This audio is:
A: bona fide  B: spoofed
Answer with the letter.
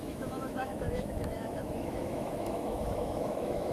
B